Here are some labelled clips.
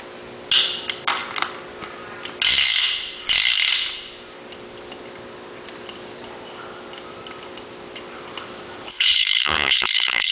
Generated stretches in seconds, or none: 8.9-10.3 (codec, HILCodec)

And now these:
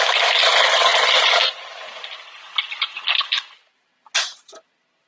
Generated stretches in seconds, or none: none

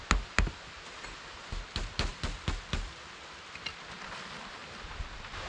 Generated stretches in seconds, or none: none

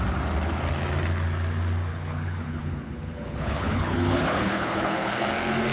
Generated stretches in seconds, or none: 1.9-5.3 (codec, HILCodec)